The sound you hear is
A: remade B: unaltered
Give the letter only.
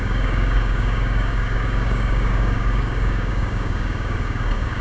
A